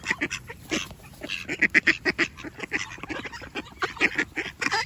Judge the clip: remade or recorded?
recorded